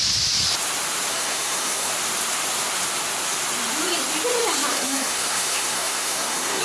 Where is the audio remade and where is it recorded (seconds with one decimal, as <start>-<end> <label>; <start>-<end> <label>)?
0.0-1.1 recorded; 1.1-1.9 remade; 1.9-4.7 recorded; 4.7-6.6 remade